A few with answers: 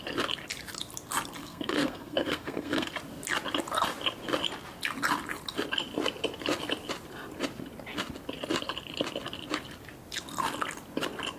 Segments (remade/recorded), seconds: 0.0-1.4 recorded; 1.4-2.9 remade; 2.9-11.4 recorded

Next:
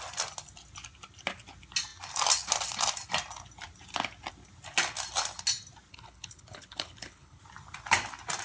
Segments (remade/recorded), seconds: 0.0-5.9 recorded; 5.9-7.4 remade; 7.4-8.4 recorded

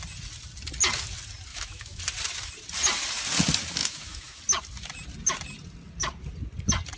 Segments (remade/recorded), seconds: 0.0-1.5 recorded; 1.5-2.0 remade; 2.0-3.8 recorded; 3.8-4.4 remade; 4.4-7.0 recorded

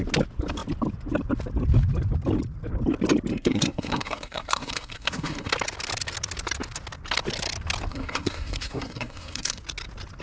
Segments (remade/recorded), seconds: 0.0-3.3 recorded; 3.3-5.5 remade; 5.5-7.9 recorded; 7.9-9.6 remade; 9.6-10.2 recorded

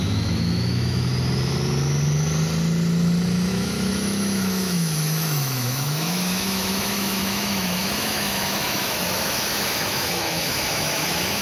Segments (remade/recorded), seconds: 0.0-1.1 remade; 1.1-3.5 recorded; 3.5-11.4 remade

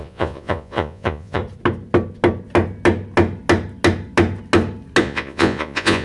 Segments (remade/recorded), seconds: 0.0-1.4 remade; 1.4-5.0 recorded; 5.0-6.0 remade

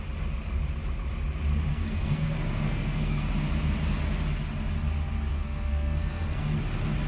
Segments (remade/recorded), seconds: 0.0-1.7 recorded; 1.7-3.3 remade; 3.3-5.3 recorded; 5.3-6.6 remade; 6.6-7.1 recorded

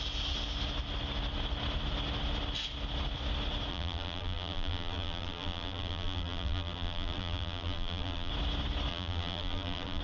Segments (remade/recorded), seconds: 0.0-3.7 recorded; 3.7-8.3 remade; 8.3-8.9 recorded; 8.9-10.0 remade